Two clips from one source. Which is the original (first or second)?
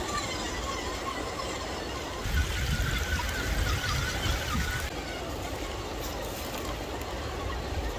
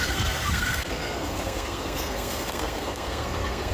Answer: first